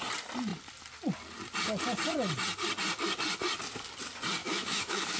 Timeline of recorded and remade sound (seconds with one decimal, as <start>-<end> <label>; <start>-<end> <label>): 0.0-4.4 recorded; 4.4-5.2 remade